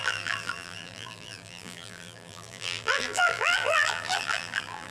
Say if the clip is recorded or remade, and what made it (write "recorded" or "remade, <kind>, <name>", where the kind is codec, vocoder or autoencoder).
remade, vocoder, BigVGAN v2